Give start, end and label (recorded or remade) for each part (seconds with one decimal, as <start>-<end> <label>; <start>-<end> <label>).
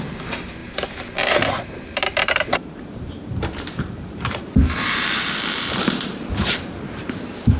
0.0-7.6 remade